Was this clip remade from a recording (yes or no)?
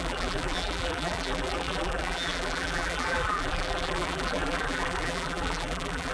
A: yes